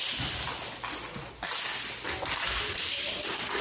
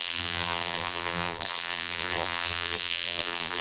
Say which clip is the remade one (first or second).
second